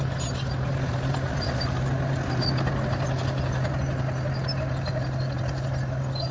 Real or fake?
real